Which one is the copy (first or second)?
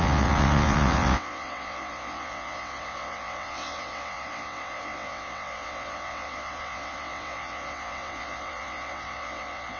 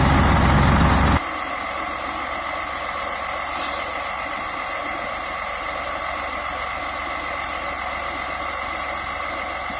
first